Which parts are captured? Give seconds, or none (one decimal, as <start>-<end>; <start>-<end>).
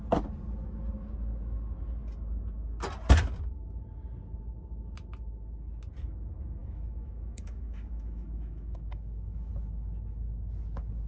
0.0-6.6; 9.5-11.1